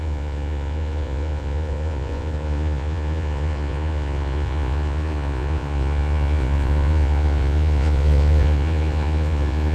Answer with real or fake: fake